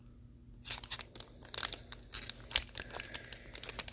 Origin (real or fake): real